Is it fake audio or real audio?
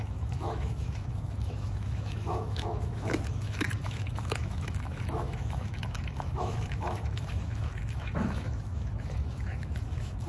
fake